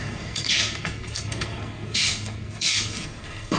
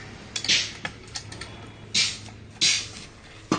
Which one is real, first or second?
second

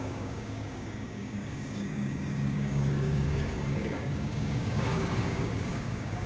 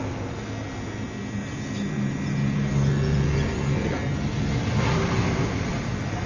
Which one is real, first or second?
second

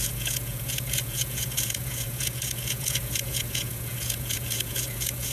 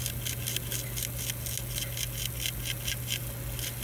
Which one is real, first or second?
second